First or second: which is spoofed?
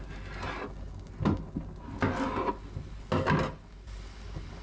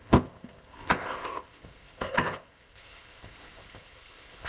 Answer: second